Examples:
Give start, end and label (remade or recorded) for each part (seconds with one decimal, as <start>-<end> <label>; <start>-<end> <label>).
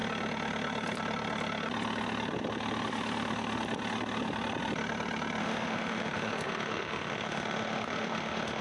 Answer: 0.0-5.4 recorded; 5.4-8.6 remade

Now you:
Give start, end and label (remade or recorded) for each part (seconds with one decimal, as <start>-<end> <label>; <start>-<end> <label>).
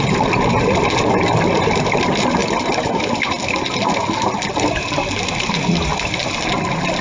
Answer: 0.0-7.0 recorded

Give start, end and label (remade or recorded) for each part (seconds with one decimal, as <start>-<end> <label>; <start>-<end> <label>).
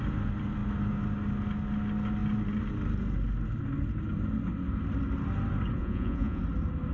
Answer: 0.0-5.8 recorded; 5.8-6.4 remade; 6.4-6.9 recorded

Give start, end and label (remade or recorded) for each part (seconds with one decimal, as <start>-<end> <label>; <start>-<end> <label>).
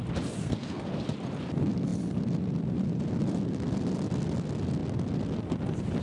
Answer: 0.0-0.4 recorded; 0.4-0.9 remade; 0.9-6.0 recorded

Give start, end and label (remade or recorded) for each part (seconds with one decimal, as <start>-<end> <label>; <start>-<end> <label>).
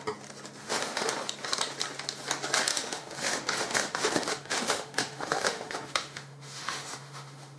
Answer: 0.0-0.6 recorded; 0.6-1.1 remade; 1.1-2.7 recorded; 2.7-7.6 remade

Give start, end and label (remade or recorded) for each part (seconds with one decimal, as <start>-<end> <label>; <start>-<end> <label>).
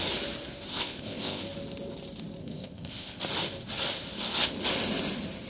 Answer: 0.0-0.7 recorded; 0.7-1.4 remade; 1.4-2.4 recorded; 2.4-3.2 remade; 3.2-5.5 recorded